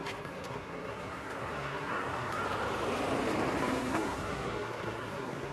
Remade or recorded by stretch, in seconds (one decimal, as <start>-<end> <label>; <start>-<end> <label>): 0.0-2.4 remade; 2.4-3.6 recorded; 3.6-5.5 remade